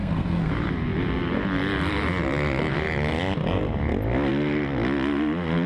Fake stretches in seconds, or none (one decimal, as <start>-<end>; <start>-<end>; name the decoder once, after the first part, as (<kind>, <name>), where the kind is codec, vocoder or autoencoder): 0.0-0.5 (codec, SNAC)